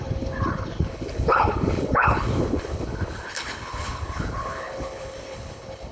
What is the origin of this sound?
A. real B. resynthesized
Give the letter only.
B